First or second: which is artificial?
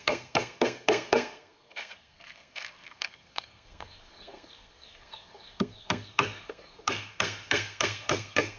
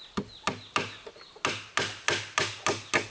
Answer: first